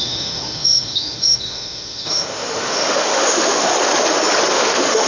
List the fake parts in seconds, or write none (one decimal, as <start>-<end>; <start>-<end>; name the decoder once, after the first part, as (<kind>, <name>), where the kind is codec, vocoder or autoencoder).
0.0-3.7 (autoencoder, DAC-VAE); 4.5-5.1